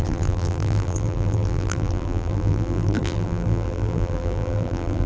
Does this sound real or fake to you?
fake